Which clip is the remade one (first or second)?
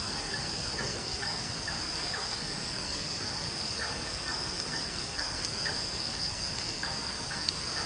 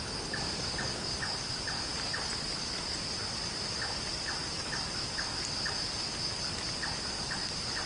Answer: first